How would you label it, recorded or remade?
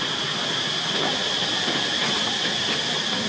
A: recorded